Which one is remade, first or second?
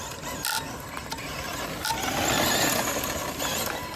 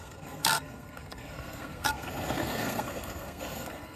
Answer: second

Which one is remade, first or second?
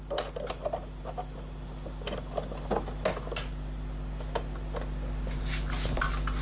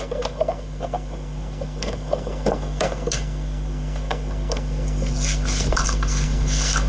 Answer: second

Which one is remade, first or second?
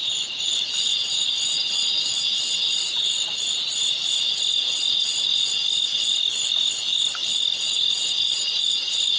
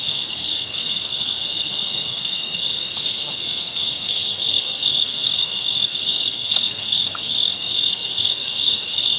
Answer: second